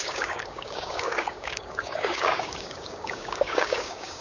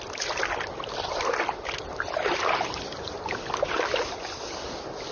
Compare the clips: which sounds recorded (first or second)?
second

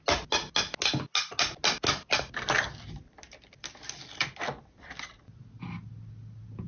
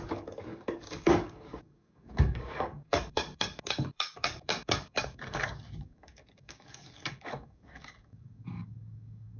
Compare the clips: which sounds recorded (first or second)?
first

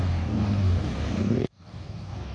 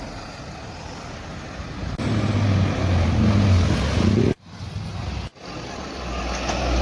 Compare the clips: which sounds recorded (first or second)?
second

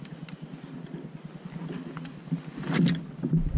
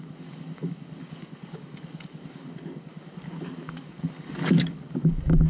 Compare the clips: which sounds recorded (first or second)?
first